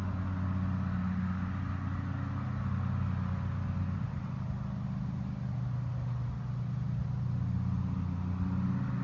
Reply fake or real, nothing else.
real